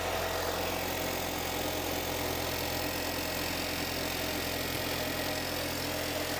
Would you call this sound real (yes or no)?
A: yes